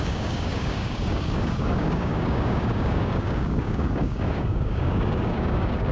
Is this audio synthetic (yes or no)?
yes